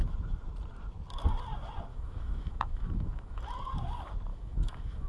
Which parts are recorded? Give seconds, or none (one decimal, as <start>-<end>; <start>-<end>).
0.0-1.9; 3.4-4.3